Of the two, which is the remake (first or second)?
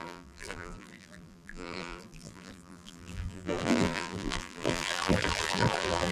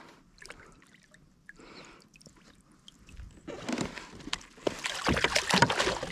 first